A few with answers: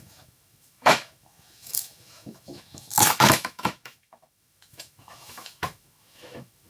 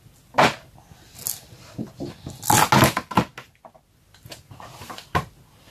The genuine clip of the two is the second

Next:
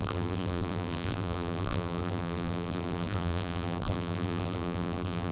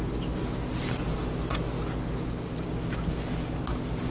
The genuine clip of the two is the second